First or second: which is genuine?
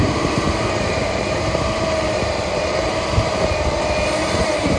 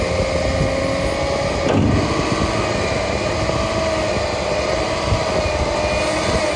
second